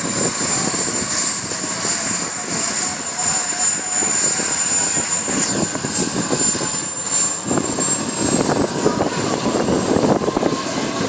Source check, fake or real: real